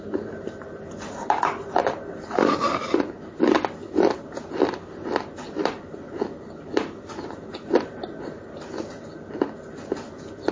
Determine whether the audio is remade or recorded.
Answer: recorded